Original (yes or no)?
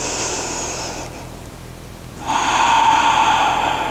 yes